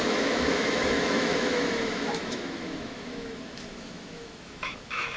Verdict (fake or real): fake